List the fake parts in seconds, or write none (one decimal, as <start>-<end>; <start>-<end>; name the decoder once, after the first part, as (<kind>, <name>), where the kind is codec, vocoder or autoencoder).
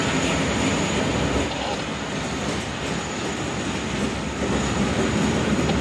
none